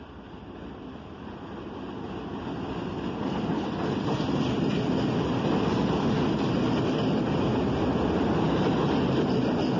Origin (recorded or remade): recorded